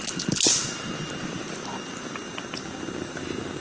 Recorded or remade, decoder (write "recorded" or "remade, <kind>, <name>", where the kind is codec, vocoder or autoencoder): recorded